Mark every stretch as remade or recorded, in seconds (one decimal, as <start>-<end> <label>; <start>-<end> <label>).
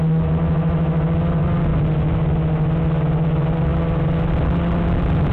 0.0-5.3 recorded